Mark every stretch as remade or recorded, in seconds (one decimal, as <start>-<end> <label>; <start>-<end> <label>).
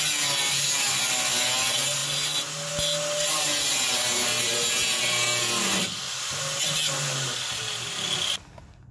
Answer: 0.0-8.9 recorded